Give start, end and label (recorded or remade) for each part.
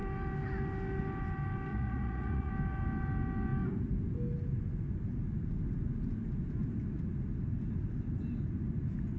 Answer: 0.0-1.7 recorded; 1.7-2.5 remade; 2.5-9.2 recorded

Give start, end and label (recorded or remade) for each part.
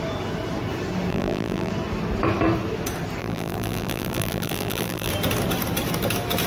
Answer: 0.0-1.1 recorded; 1.1-1.7 remade; 1.7-3.2 recorded; 3.2-5.1 remade; 5.1-6.5 recorded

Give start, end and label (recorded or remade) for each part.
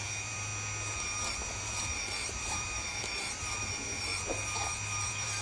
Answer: 0.0-0.5 remade; 0.5-1.5 recorded; 1.5-4.1 remade; 4.1-4.7 recorded; 4.7-5.4 remade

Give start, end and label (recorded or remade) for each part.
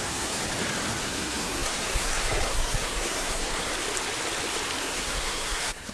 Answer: 0.0-0.4 remade; 0.4-1.0 recorded; 1.0-3.7 remade; 3.7-4.8 recorded; 4.8-5.9 remade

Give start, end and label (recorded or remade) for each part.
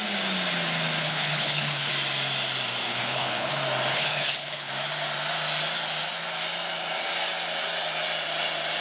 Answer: 0.0-1.0 recorded; 1.0-1.9 remade; 1.9-2.9 recorded; 2.9-3.5 remade; 3.5-3.9 recorded; 3.9-4.7 remade; 4.7-8.8 recorded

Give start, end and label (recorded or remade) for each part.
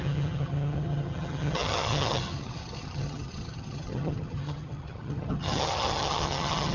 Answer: 0.0-6.7 remade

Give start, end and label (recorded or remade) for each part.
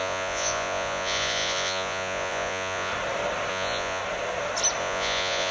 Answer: 0.0-2.9 remade; 2.9-3.5 recorded; 3.5-4.0 remade; 4.0-4.8 recorded; 4.8-5.5 remade